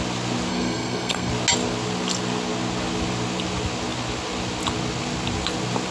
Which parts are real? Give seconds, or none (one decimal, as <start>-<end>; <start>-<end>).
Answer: 0.0-0.5; 1.3-5.9